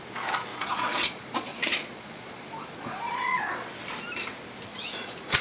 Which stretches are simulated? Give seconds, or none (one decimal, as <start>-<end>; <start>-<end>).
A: 0.5-3.7; 4.7-5.4